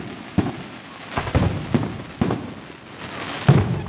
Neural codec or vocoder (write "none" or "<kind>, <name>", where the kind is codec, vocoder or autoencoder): none